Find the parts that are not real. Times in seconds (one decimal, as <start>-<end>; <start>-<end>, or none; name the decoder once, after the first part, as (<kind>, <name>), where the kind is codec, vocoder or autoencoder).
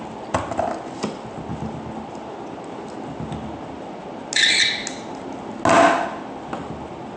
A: none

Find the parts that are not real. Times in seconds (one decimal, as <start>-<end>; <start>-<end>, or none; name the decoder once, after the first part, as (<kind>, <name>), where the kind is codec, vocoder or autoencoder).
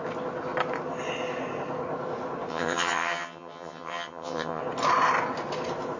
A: 2.5-4.6 (vocoder, HiFi-GAN)